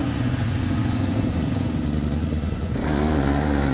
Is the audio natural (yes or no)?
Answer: no